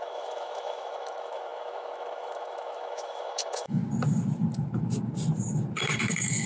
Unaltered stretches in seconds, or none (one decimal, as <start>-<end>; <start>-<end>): 3.8-6.0